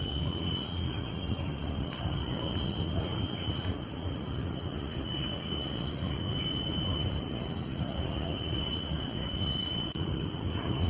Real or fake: fake